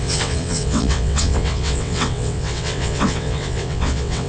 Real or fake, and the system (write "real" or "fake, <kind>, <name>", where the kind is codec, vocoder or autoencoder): fake, vocoder, WaveNeXt